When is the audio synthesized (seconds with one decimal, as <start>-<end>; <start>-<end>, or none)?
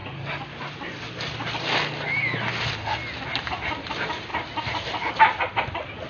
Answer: none